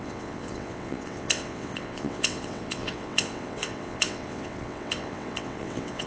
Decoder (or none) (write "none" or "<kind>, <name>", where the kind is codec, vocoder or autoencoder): vocoder, WaveNeXt